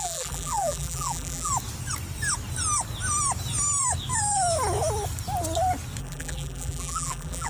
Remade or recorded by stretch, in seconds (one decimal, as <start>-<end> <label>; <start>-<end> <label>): 0.0-1.5 remade; 1.5-6.0 recorded; 6.0-7.5 remade